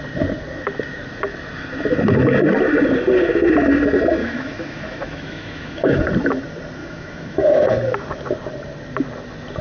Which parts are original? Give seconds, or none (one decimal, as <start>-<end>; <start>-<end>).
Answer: 0.0-4.2; 6.0-6.8; 7.7-9.6